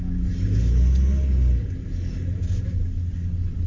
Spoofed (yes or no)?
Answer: no